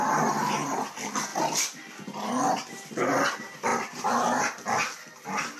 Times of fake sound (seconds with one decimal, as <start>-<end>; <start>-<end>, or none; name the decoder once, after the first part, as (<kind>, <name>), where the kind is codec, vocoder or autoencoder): 1.3-2.7 (vocoder, BigVGAN v2); 3.7-5.1